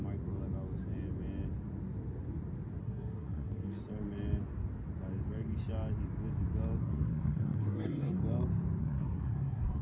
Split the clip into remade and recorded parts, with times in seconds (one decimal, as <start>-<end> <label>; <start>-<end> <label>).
0.0-2.8 recorded; 2.8-3.8 remade; 3.8-6.8 recorded; 6.8-8.2 remade; 8.2-8.8 recorded; 8.8-9.8 remade